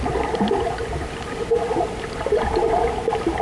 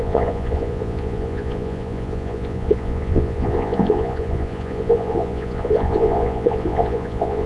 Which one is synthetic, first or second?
second